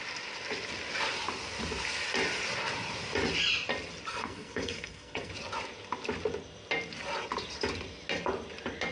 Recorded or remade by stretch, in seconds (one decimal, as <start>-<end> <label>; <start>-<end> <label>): 0.0-4.1 recorded; 4.1-5.3 remade; 5.3-8.9 recorded